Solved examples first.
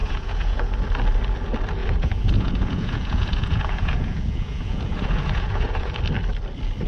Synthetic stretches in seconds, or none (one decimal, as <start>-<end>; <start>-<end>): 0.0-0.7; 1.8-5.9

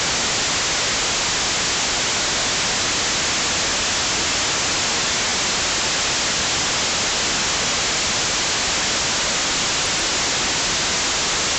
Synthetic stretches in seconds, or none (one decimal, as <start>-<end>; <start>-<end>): none

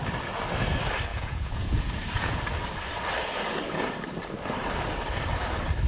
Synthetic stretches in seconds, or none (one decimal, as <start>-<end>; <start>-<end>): 1.1-2.4

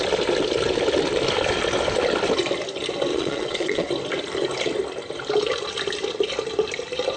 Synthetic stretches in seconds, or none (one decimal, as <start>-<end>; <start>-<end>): 3.1-3.9

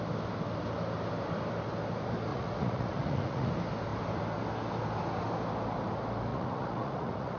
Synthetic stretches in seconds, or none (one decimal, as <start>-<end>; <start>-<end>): 2.3-3.5; 6.3-7.4

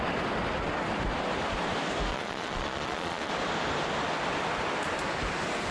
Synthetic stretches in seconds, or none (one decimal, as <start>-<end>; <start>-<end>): 2.1-3.3